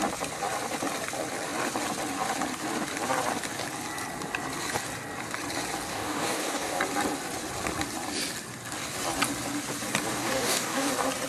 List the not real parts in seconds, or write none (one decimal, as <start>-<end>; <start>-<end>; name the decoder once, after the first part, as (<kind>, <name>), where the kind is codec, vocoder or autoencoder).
5.9-6.8 (codec, DAC); 10.1-10.9